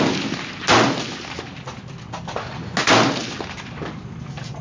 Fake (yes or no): no